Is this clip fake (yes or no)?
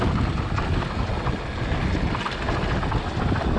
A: no